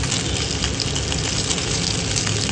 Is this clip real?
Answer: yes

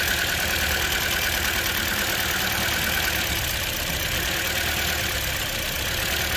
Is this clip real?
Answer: yes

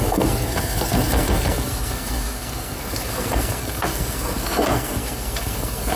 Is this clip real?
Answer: no